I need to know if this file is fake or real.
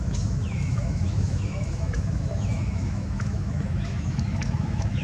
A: fake